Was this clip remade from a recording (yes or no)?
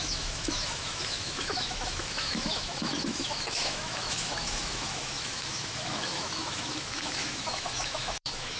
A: yes